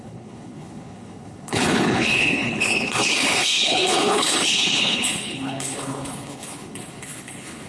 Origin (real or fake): fake